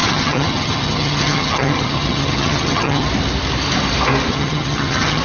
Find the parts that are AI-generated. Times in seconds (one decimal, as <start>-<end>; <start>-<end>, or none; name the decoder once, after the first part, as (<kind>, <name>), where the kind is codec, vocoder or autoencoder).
0.0-3.1 (vocoder, HiFi-GAN); 4.3-5.2